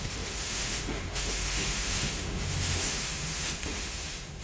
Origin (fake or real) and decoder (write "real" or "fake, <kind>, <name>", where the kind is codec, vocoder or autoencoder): fake, autoencoder, DAC-VAE